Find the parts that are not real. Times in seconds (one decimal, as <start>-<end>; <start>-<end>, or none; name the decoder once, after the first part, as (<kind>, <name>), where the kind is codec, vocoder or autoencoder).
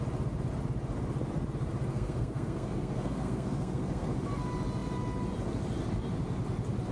1.9-4.1 (codec, SNAC)